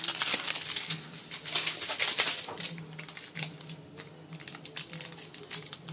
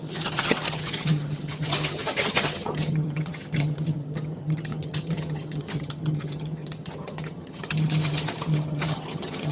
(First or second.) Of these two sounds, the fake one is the second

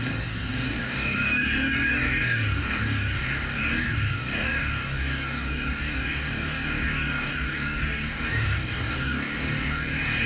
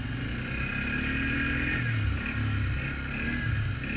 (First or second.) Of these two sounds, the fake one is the first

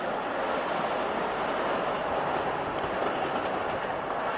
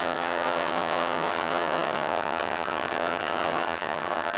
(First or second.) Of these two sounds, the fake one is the second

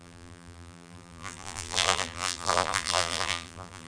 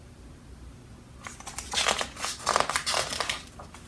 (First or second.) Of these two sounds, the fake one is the first